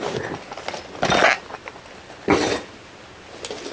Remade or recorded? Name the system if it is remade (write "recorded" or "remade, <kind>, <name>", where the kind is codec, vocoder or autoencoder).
recorded